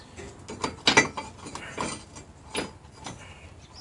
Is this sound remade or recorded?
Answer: recorded